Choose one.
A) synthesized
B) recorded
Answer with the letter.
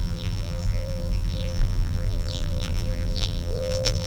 A